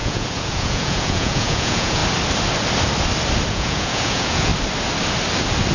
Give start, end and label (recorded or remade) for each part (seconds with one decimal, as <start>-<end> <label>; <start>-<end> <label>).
0.0-2.0 remade; 2.0-3.5 recorded; 3.5-4.5 remade; 4.5-5.7 recorded